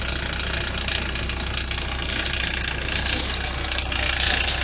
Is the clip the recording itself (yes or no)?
yes